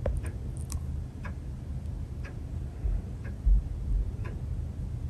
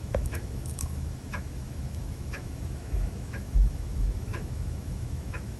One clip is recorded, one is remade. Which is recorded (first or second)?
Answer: first